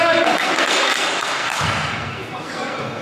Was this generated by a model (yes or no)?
yes